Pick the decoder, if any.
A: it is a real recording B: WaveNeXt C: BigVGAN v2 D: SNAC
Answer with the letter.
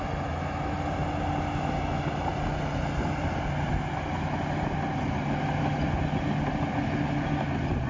A